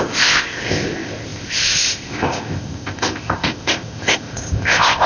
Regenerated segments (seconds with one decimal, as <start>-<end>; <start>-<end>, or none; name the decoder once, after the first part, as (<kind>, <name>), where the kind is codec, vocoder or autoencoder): 0.0-5.1 (codec, ZipCodec)